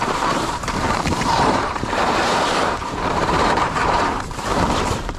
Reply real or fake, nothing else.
fake